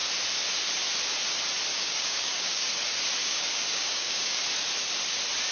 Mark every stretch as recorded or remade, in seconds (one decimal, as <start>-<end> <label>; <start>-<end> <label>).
0.0-1.7 recorded; 1.7-2.7 remade; 2.7-3.2 recorded; 3.2-4.4 remade; 4.4-5.5 recorded